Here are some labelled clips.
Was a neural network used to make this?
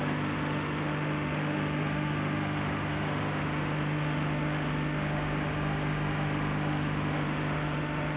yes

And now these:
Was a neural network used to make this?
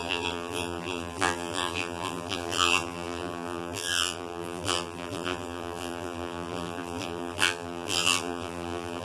yes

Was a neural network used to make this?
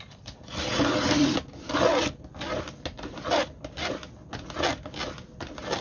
no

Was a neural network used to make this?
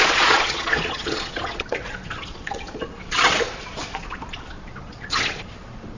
yes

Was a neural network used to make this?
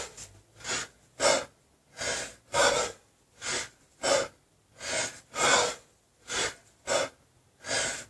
no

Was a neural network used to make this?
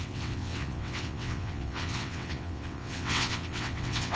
yes